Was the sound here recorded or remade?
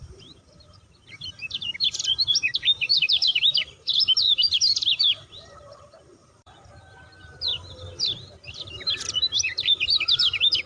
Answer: remade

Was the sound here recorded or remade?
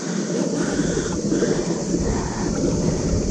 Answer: recorded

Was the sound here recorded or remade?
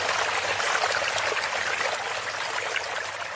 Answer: recorded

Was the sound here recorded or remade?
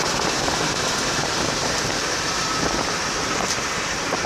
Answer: remade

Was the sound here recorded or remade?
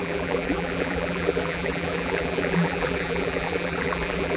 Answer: remade